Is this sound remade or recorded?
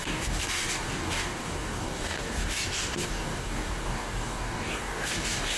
remade